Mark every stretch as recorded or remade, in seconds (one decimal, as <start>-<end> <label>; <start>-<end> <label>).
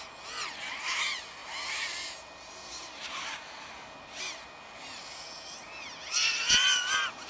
0.0-7.3 recorded